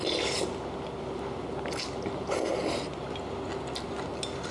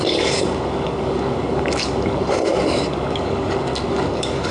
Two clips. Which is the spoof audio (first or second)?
second